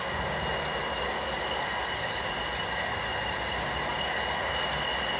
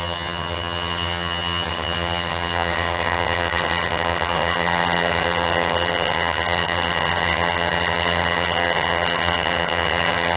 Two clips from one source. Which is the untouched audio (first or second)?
first